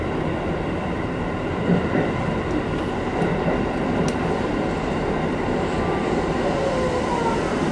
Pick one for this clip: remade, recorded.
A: recorded